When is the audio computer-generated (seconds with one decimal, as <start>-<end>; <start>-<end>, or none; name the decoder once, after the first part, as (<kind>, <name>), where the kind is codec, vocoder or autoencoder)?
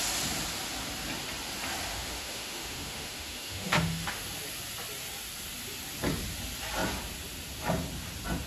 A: 1.9-4.2 (autoencoder, DAC-VAE)